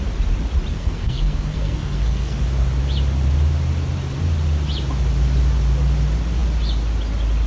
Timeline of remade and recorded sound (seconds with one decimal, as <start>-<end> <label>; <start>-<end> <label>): 0.0-0.7 recorded; 0.7-2.4 remade; 2.4-7.5 recorded